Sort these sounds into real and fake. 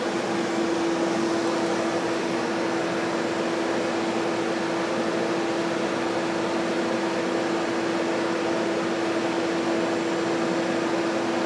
real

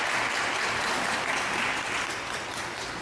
real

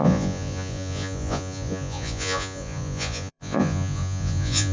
fake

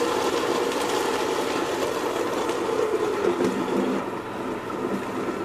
real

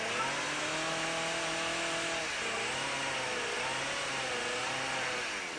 real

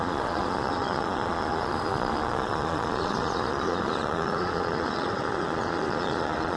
fake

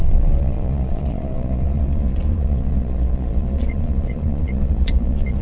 fake